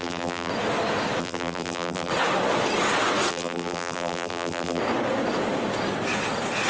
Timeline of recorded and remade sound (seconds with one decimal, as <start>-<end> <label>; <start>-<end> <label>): 0.0-0.5 remade; 0.5-1.2 recorded; 1.2-2.1 remade; 2.1-3.3 recorded; 3.3-4.8 remade; 4.8-6.7 recorded

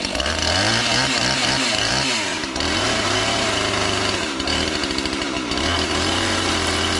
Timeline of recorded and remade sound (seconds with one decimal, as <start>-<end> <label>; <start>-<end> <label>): 0.0-1.4 recorded; 1.4-1.9 remade; 1.9-2.3 recorded; 2.3-6.5 remade; 6.5-7.0 recorded